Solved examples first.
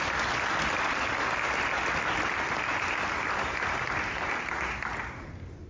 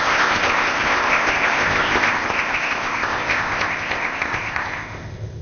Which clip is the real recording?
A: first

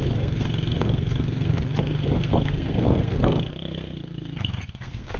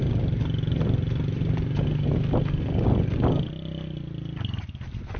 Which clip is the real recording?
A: second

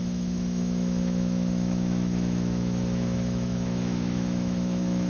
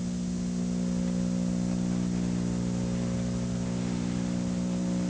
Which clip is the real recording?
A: second